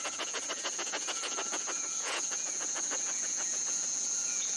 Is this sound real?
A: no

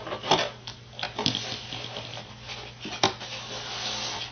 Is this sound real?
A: yes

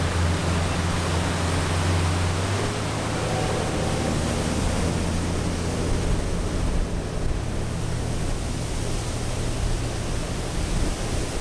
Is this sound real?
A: yes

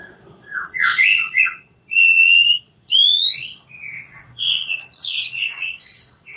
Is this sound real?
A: no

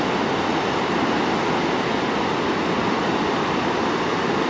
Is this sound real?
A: yes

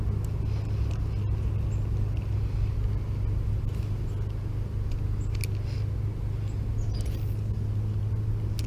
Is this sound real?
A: yes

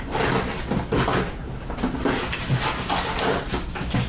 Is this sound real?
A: yes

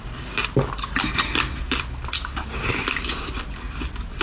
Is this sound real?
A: yes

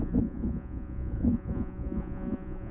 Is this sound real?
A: no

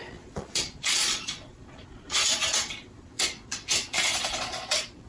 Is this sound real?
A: no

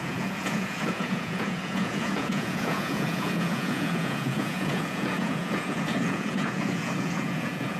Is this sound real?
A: no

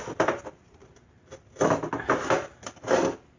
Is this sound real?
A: yes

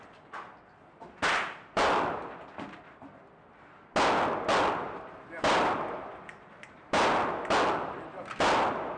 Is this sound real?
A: yes